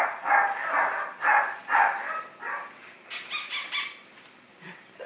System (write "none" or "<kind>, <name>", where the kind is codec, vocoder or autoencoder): none